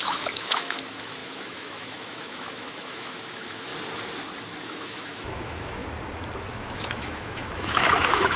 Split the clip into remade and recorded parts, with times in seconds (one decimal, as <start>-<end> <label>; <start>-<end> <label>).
0.0-3.7 remade; 3.7-4.6 recorded; 4.6-5.8 remade; 5.8-6.5 recorded; 6.5-8.4 remade